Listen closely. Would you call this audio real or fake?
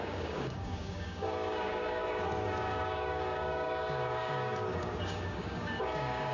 fake